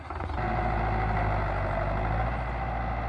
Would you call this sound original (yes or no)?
yes